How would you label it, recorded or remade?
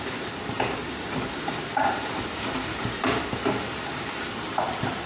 remade